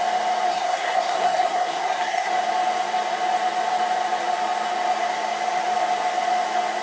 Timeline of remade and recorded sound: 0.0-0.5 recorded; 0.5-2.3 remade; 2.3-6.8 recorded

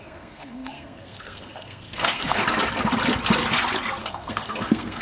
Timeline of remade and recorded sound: 0.0-2.4 remade; 2.4-4.0 recorded; 4.0-5.0 remade

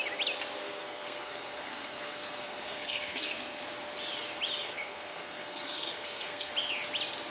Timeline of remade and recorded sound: 0.0-0.6 recorded; 0.6-3.6 remade; 3.6-4.6 recorded; 4.6-6.5 remade; 6.5-7.3 recorded

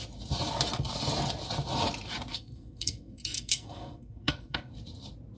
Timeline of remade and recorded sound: 0.0-2.3 recorded; 2.3-4.7 remade; 4.7-5.4 recorded

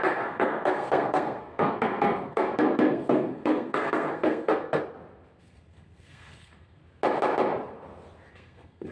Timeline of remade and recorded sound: 0.0-4.8 remade; 4.8-5.4 recorded; 5.4-6.8 remade; 6.8-8.3 recorded; 8.3-8.9 remade

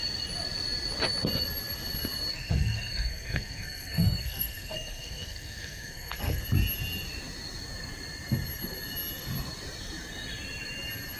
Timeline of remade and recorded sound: 0.0-2.3 recorded; 2.3-6.4 remade; 6.4-11.2 recorded

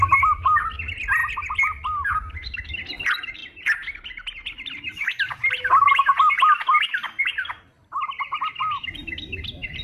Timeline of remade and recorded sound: 0.0-9.8 recorded

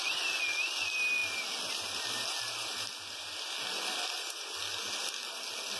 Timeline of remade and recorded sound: 0.0-5.8 recorded